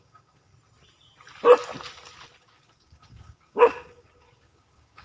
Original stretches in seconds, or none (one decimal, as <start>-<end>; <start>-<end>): 0.5-2.4